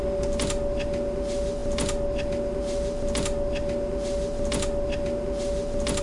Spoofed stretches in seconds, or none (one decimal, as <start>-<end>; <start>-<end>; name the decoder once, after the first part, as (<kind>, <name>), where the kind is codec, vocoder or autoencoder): none